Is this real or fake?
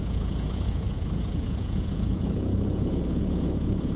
fake